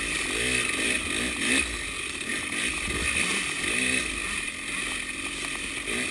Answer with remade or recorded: recorded